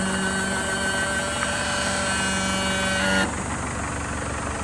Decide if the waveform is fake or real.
real